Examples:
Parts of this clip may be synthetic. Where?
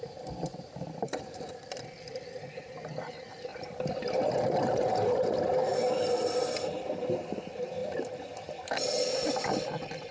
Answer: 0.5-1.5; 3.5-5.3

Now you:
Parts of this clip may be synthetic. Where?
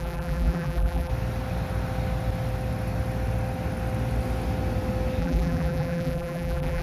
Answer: 0.0-1.1; 5.2-6.8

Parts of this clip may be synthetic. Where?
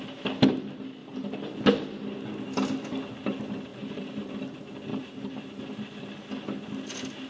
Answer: 1.0-1.5; 3.7-4.3; 4.9-5.4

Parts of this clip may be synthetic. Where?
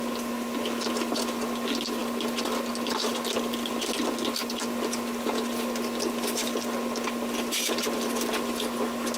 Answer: none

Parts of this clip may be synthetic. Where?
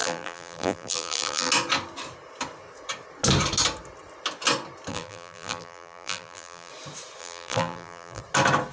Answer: 0.0-1.5; 4.9-6.7; 7.2-8.2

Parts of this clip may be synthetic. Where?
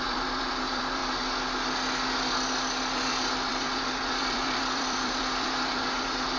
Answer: 0.0-1.0; 3.5-6.4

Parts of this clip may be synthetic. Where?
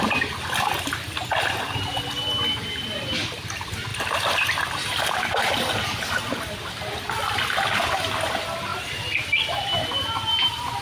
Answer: 3.9-6.0; 8.7-9.5